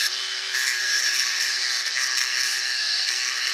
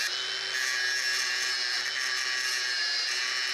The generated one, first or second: first